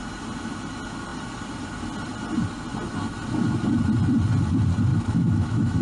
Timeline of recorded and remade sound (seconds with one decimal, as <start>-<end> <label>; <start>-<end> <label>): 0.0-4.9 recorded; 4.9-5.8 remade